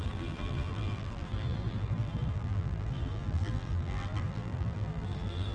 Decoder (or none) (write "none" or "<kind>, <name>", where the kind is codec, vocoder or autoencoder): vocoder, BigVGAN v2